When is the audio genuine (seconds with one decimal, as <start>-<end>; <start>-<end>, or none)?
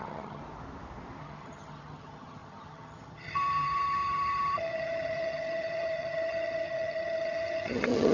0.4-1.2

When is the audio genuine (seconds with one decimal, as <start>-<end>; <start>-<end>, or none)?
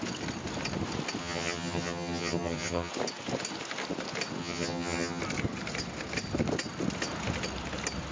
0.0-1.2; 2.9-4.4; 5.2-8.1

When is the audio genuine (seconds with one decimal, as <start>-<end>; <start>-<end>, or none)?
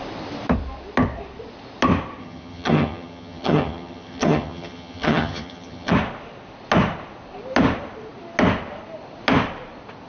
0.0-2.2; 5.9-10.1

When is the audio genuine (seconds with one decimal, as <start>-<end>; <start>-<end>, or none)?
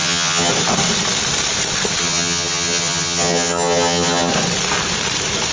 0.5-2.0; 4.3-5.5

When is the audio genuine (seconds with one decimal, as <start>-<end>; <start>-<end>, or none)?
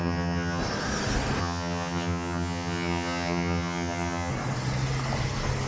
0.6-1.4; 4.3-5.7